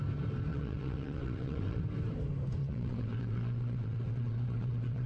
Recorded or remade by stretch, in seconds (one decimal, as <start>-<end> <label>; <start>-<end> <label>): 0.0-0.5 recorded; 0.5-1.8 remade; 1.8-2.6 recorded; 2.6-5.1 remade